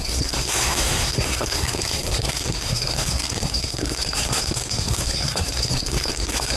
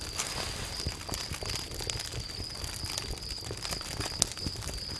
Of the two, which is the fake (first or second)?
first